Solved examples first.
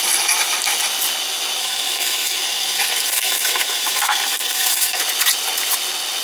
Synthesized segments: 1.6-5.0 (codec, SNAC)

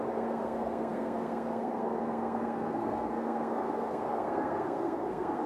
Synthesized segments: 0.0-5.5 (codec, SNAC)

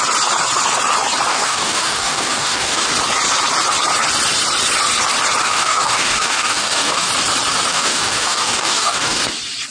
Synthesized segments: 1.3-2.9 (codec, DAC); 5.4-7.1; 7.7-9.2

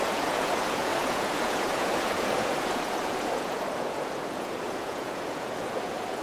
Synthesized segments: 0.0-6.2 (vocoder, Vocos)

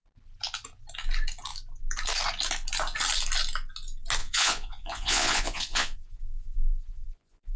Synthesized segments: 4.2-7.6 (vocoder, Vocos)